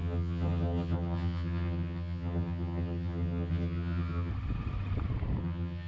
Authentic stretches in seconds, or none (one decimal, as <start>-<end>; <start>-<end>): 4.3-5.4